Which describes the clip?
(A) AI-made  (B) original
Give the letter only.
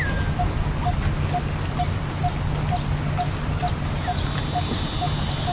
B